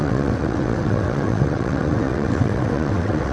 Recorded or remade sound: remade